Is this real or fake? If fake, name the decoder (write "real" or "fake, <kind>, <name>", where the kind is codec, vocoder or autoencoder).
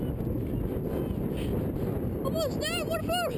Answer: real